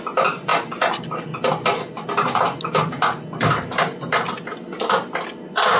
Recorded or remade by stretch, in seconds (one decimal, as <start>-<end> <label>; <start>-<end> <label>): 0.0-5.8 recorded